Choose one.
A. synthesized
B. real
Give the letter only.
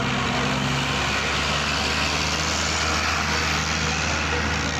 B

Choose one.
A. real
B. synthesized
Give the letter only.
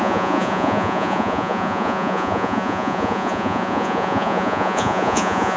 B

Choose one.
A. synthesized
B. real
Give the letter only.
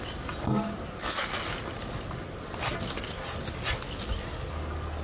B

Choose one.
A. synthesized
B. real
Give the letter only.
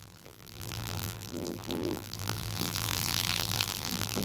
A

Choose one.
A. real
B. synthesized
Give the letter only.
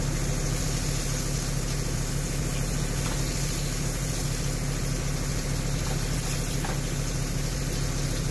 A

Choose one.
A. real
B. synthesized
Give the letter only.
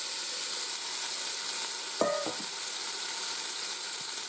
A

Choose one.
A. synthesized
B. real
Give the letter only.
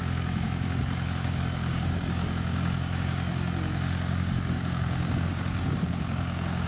A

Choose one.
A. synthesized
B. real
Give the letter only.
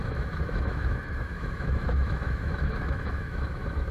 A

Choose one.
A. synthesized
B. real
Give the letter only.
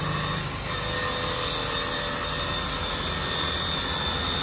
B